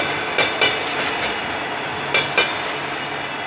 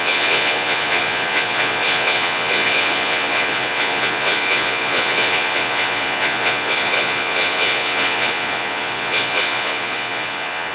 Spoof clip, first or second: second